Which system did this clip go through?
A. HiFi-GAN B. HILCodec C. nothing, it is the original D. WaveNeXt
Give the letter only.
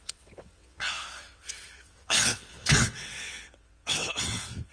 D